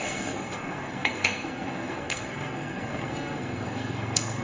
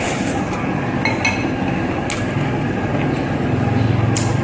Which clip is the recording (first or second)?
second